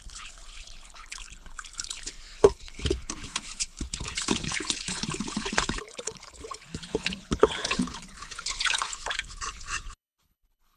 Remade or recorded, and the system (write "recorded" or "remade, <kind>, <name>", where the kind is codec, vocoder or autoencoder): remade, codec, HILCodec